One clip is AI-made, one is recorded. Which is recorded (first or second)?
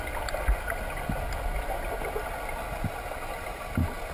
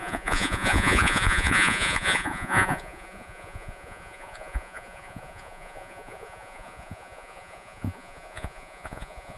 first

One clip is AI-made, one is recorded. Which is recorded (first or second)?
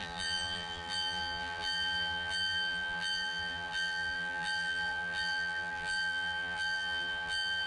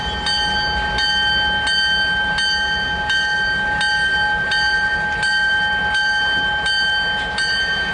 second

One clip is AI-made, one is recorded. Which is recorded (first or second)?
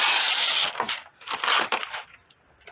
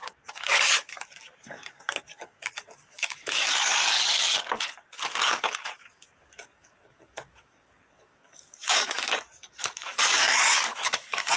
first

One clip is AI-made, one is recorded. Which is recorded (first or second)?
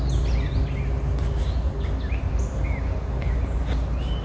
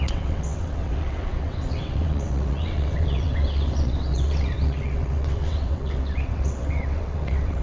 first